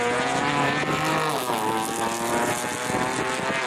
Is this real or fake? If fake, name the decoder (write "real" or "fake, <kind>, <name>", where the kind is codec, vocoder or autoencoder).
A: real